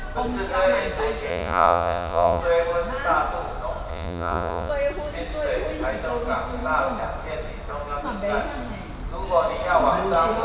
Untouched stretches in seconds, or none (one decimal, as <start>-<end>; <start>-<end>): 0.0-1.3; 2.4-3.9; 4.7-10.4